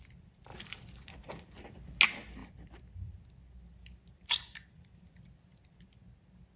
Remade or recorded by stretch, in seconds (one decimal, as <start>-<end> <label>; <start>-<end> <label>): 0.0-0.5 recorded; 0.5-2.0 remade; 2.0-2.4 recorded; 2.4-6.6 remade